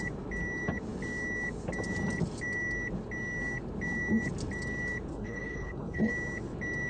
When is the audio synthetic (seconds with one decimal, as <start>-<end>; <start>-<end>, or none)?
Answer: 5.1-6.1